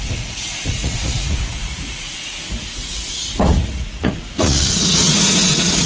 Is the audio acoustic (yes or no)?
no